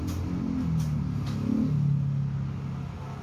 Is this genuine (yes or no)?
yes